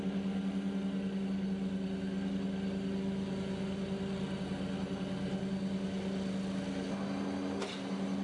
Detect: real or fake real